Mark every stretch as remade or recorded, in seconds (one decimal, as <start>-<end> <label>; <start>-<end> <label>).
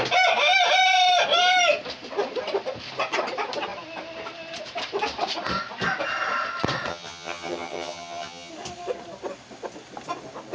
0.0-6.9 recorded; 6.9-8.5 remade; 8.5-10.5 recorded